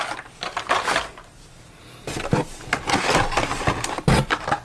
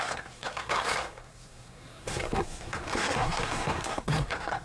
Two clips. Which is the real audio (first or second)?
first